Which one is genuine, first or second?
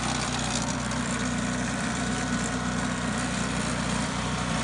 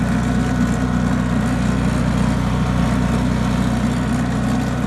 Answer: second